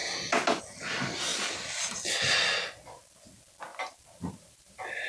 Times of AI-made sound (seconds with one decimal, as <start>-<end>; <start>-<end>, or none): 3.7-5.1